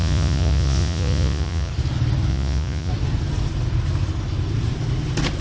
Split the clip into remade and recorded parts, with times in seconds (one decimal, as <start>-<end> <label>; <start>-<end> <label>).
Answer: 0.0-1.7 remade; 1.7-2.3 recorded; 2.3-2.9 remade; 2.9-5.4 recorded